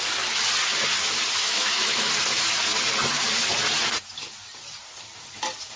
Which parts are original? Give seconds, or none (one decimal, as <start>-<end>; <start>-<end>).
0.0-1.4; 2.1-5.8